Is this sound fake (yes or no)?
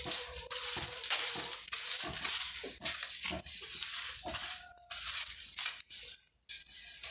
no